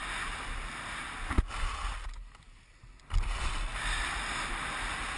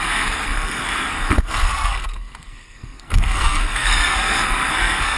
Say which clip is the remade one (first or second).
second